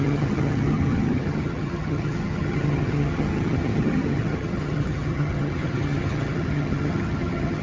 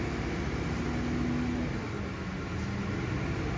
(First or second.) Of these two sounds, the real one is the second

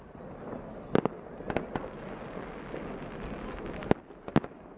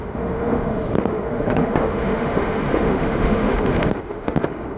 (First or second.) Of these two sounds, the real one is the first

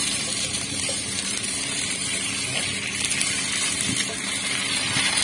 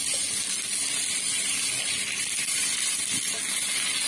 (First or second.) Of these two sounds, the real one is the second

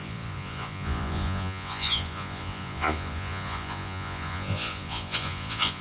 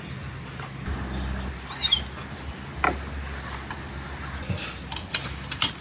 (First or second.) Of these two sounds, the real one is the second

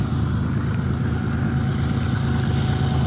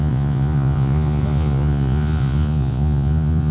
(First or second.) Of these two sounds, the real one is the first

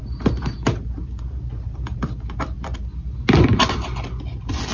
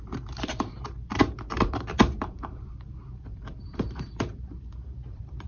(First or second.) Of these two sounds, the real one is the first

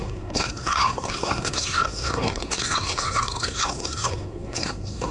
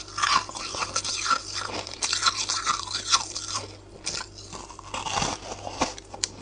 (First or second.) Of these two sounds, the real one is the second